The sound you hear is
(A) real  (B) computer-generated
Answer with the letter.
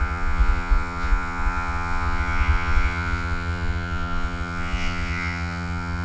B